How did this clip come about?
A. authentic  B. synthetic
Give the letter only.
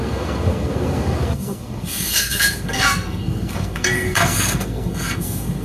B